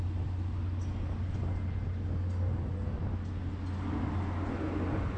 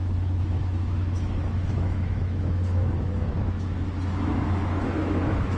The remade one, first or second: second